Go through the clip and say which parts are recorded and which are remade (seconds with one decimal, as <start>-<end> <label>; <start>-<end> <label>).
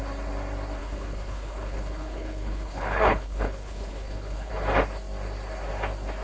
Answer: 0.0-0.8 recorded; 0.8-4.5 remade; 4.5-6.2 recorded